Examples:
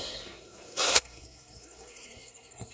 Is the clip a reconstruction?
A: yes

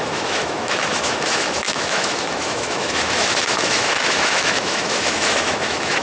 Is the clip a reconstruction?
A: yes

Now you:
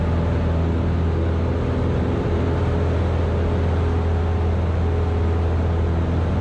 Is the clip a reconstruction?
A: no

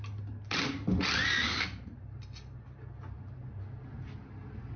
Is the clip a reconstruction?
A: no